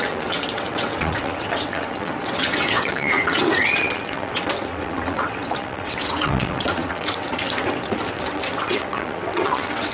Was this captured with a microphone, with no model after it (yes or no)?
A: no